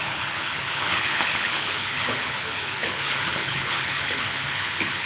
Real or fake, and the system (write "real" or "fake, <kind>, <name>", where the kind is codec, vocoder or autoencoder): fake, codec, HILCodec